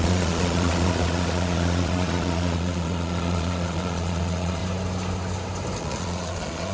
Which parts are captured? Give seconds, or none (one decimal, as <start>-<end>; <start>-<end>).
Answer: 4.6-5.8